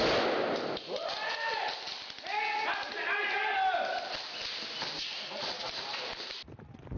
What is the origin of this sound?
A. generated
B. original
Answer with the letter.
B